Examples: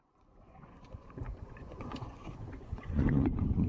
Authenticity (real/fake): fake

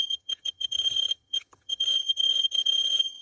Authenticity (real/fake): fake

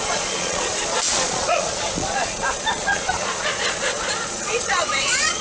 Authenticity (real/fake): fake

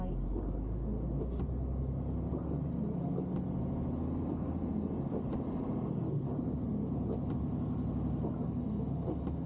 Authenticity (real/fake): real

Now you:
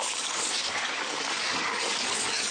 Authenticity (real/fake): fake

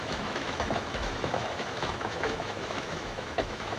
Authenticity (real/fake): fake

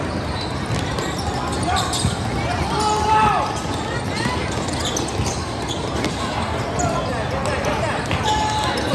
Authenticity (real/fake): real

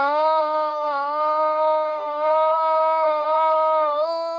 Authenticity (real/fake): fake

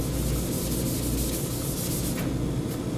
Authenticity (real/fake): real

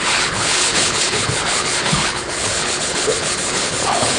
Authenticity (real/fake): fake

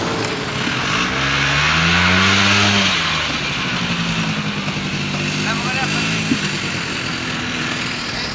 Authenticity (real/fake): real